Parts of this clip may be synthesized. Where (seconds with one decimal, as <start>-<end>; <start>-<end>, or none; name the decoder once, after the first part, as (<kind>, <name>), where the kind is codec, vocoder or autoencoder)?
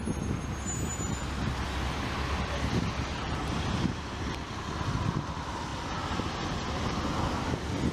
none